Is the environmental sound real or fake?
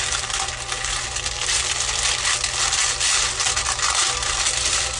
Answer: real